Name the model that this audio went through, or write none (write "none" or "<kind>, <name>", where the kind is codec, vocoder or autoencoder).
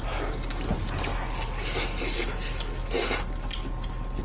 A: none